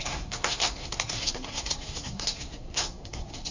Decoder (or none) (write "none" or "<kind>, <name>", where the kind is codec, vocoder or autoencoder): codec, SNAC